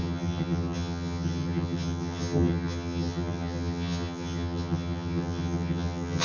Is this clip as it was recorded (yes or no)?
no